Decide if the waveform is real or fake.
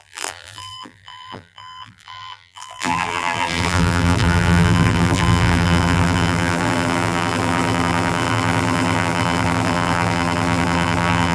fake